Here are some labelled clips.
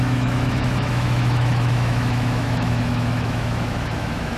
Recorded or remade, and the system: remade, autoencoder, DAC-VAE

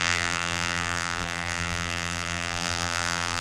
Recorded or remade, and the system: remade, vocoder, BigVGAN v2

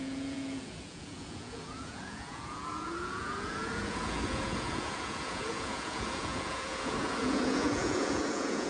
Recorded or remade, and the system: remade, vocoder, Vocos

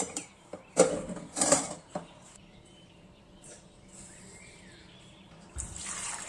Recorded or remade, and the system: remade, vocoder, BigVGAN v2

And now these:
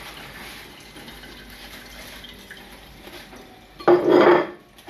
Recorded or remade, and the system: recorded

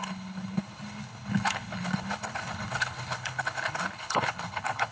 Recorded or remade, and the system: remade, codec, HILCodec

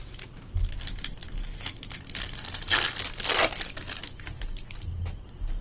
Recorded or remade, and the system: recorded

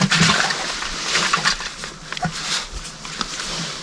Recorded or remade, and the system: recorded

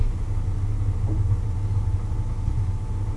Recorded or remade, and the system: recorded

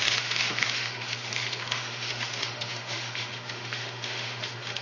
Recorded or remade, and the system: remade, autoencoder, DAC-VAE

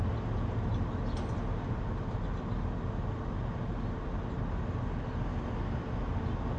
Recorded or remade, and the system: recorded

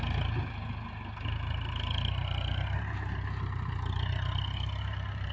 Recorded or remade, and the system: recorded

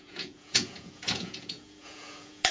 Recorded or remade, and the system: remade, vocoder, Vocos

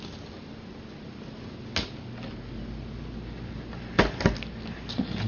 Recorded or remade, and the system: recorded